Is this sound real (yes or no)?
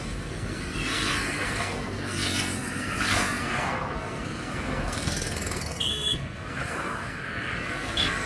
no